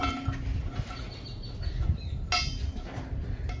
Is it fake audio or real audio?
real